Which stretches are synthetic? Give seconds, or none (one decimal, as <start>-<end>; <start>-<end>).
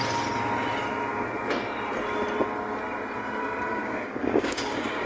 3.7-5.1